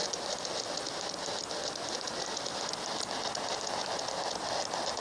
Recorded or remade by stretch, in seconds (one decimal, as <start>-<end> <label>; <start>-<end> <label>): 0.0-5.0 recorded